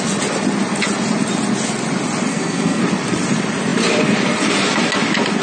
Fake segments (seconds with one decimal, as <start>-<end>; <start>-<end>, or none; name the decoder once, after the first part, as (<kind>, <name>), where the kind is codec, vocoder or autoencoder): 2.3-2.8 (codec, SNAC)